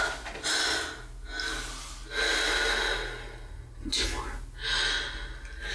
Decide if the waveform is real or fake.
real